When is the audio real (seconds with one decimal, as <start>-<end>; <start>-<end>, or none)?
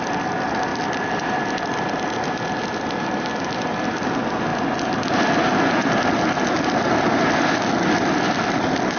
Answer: 0.0-9.0